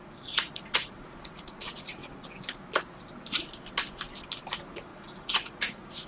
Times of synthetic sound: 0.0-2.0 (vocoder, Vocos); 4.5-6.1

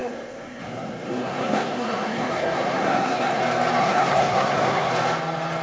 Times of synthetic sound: 0.0-3.4 (codec, SNAC); 3.8-4.9

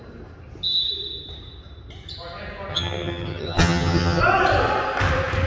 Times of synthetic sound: 2.7-4.2 (vocoder, HiFi-GAN)

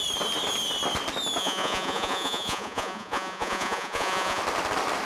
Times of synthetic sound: 1.4-4.4 (vocoder, Vocos)

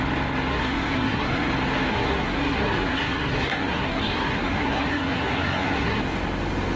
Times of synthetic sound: 0.5-1.5 (codec, SNAC); 1.9-6.0